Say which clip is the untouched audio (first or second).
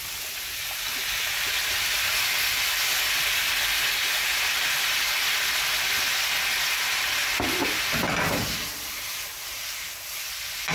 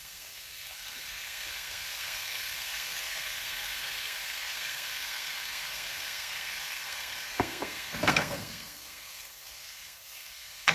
first